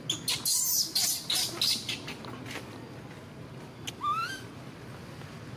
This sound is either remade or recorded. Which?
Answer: recorded